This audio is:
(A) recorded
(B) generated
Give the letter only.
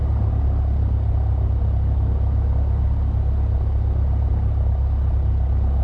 A